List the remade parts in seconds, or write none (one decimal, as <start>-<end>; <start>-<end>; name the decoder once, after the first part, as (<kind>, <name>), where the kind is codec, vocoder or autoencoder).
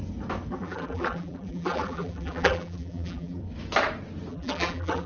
0.5-3.4 (vocoder, BigVGAN v2); 4.3-5.1